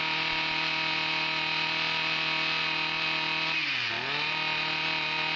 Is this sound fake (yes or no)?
no